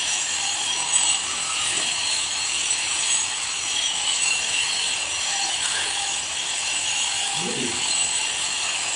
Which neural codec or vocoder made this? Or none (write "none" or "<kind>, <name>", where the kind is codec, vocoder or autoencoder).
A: autoencoder, DAC-VAE